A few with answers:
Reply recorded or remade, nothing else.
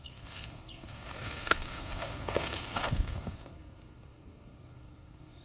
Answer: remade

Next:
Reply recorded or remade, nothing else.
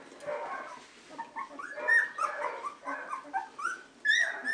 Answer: recorded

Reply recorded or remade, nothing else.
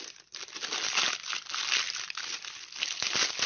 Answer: recorded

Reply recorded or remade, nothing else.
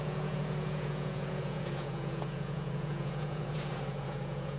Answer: remade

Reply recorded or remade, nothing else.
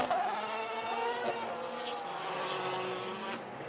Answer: recorded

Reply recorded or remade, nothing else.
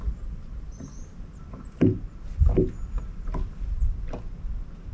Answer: recorded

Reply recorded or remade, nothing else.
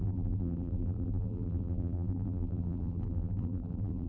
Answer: remade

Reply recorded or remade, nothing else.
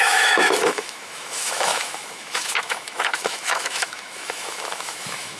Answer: remade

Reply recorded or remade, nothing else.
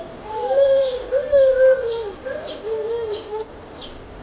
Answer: remade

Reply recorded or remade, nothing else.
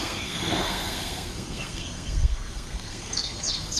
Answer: remade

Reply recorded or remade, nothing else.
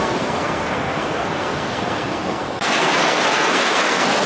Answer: remade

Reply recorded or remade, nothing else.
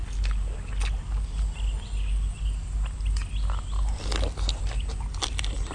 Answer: recorded